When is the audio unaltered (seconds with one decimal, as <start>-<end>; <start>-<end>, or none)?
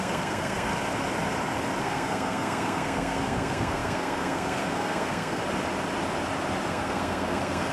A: 0.7-1.8; 5.4-6.7